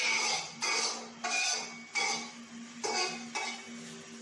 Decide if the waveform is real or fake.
real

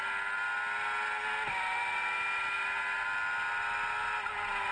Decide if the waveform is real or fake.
real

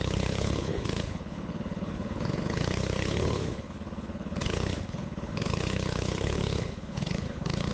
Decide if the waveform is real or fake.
fake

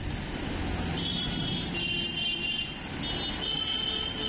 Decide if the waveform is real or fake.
real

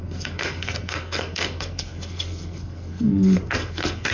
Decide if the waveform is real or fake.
fake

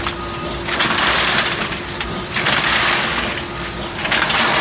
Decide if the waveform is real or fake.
real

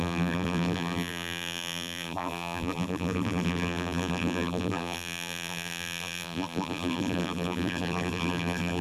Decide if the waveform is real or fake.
fake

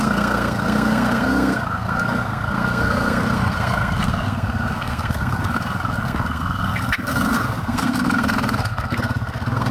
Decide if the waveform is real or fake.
fake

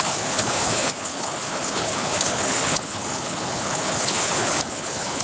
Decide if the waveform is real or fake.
fake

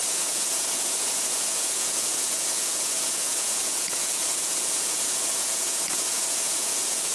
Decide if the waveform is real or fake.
fake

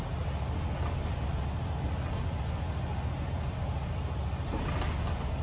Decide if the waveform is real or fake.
real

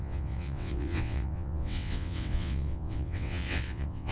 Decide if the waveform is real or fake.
fake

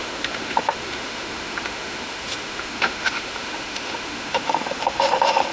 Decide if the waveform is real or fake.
fake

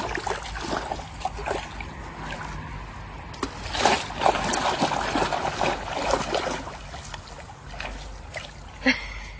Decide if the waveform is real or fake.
real